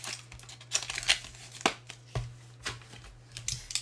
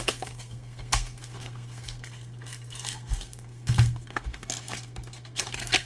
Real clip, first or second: first